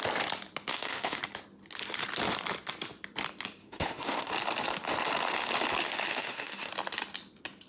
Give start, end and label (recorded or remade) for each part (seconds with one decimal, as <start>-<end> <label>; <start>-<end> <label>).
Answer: 0.0-0.7 recorded; 0.7-1.2 remade; 1.2-3.6 recorded; 3.6-4.3 remade; 4.3-6.1 recorded; 6.1-6.7 remade; 6.7-7.7 recorded